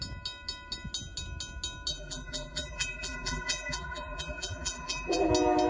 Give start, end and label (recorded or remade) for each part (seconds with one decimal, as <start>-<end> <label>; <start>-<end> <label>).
0.0-1.9 recorded; 1.9-5.3 remade; 5.3-5.7 recorded

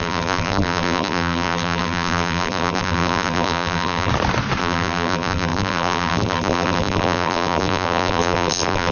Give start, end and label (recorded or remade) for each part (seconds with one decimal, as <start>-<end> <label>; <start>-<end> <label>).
0.0-4.1 remade; 4.1-4.6 recorded; 4.6-8.9 remade

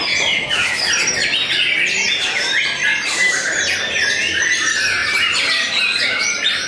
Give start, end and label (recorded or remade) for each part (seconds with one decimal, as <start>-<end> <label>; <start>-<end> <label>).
0.0-5.0 remade; 5.0-6.7 recorded

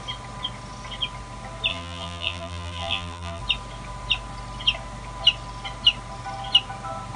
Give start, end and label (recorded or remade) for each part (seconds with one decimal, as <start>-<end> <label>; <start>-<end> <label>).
0.0-1.7 recorded; 1.7-3.4 remade; 3.4-7.2 recorded